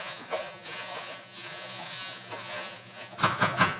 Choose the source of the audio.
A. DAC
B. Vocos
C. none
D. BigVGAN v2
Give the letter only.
B